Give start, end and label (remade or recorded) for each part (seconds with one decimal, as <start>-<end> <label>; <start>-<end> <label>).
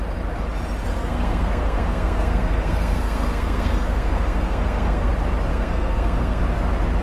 0.0-0.9 recorded; 0.9-5.1 remade; 5.1-5.5 recorded; 5.5-6.4 remade; 6.4-7.0 recorded